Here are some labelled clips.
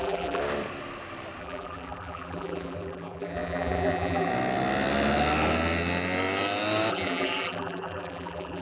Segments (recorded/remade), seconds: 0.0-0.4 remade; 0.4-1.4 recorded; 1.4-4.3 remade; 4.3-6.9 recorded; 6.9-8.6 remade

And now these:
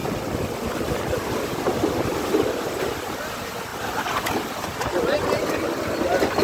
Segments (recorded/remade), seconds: 0.0-6.4 recorded

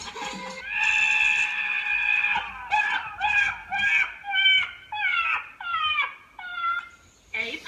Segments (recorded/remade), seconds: 0.0-7.7 recorded

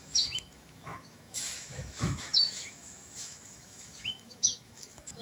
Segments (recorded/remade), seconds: 0.0-5.2 remade